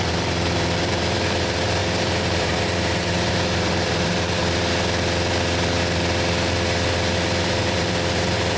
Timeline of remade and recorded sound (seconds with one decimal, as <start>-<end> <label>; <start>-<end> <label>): 0.0-4.4 remade; 4.4-7.4 recorded; 7.4-8.6 remade